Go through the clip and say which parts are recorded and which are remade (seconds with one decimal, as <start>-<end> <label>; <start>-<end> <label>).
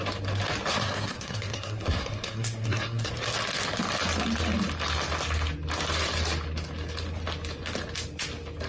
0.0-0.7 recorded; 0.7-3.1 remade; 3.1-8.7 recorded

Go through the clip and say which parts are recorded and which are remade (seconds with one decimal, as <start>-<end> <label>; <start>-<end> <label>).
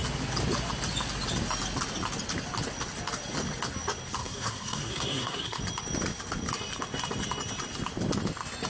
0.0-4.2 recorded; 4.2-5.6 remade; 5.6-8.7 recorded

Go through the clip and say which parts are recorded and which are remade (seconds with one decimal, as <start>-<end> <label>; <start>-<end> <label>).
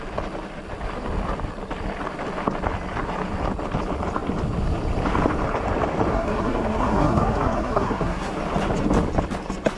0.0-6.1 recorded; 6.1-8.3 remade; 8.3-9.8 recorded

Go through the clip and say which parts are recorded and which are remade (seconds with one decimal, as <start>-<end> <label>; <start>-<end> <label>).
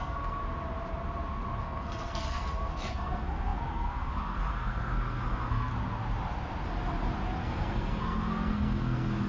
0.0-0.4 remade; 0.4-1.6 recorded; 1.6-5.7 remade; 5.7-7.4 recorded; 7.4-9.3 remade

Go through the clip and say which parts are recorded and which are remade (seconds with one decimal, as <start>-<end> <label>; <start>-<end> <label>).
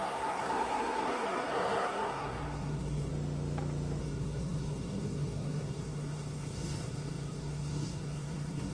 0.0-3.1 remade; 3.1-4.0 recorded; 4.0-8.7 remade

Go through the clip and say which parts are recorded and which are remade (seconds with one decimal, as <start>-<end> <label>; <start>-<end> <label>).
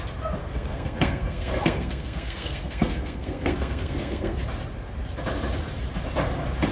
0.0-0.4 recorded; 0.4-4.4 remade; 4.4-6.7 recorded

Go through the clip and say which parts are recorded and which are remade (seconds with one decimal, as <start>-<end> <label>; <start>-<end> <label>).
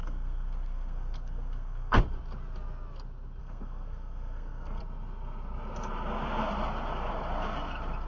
0.0-2.0 remade; 2.0-3.4 recorded; 3.4-4.8 remade; 4.8-8.1 recorded